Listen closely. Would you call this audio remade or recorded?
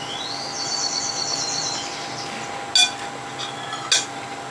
recorded